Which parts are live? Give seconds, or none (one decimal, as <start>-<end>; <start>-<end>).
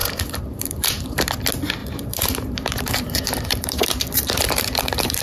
1.3-1.8